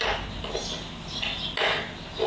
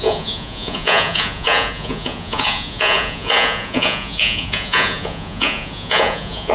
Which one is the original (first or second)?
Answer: first